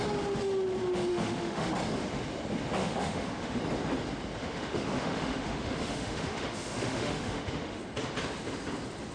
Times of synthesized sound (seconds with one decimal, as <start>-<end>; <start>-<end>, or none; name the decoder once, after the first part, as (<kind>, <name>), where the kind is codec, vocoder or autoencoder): 1.1-1.7 (autoencoder, DAC-VAE); 2.8-3.6; 4.4-7.8